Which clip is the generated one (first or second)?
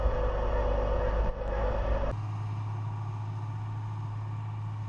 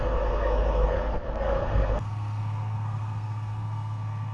second